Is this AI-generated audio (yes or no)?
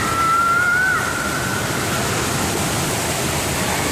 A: no